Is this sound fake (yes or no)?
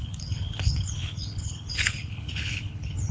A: yes